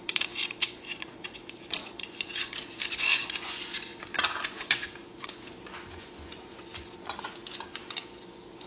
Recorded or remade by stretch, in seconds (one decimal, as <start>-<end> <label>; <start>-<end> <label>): 0.0-8.7 remade